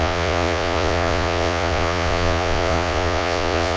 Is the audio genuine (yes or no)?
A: no